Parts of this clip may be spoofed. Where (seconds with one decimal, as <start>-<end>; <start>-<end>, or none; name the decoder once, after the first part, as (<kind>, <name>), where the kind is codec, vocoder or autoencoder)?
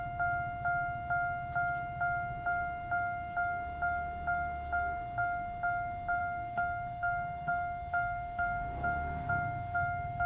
6.2-10.3 (codec, SNAC)